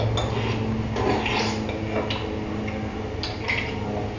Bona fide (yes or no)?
yes